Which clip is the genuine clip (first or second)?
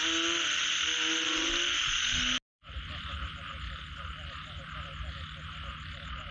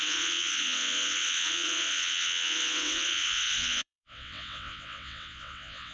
first